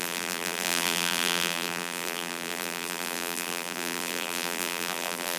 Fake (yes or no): yes